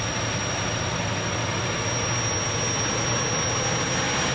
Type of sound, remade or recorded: recorded